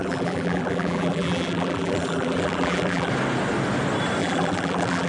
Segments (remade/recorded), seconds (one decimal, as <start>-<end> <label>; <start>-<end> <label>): 0.0-3.1 remade; 3.1-4.2 recorded; 4.2-5.1 remade

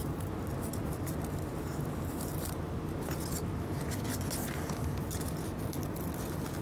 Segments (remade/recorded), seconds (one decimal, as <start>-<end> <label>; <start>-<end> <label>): 0.0-2.6 remade; 2.6-6.6 recorded

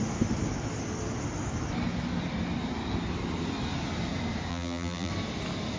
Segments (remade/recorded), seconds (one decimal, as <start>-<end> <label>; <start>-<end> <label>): 0.0-4.5 recorded; 4.5-5.1 remade; 5.1-5.8 recorded

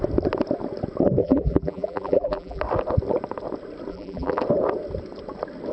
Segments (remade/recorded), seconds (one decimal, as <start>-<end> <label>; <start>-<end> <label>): 0.0-1.2 recorded; 1.2-2.6 remade; 2.6-3.9 recorded; 3.9-4.4 remade; 4.4-5.7 recorded

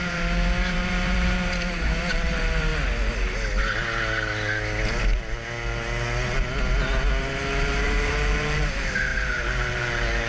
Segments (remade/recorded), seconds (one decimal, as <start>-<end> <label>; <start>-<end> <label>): 0.0-2.7 remade; 2.7-7.2 recorded; 7.2-10.3 remade

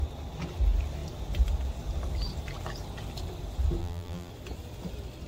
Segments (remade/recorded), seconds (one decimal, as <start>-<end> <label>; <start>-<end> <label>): 0.0-3.8 recorded; 3.8-4.3 remade; 4.3-5.3 recorded